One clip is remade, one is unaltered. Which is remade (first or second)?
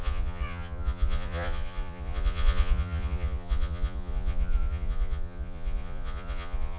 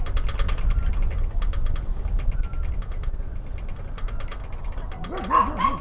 first